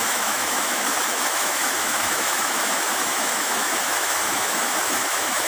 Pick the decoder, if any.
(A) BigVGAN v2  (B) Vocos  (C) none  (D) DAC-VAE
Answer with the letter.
D